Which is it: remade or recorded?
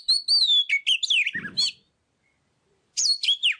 recorded